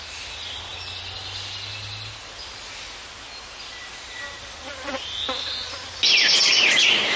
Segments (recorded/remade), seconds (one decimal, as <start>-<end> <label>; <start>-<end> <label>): 0.0-7.2 recorded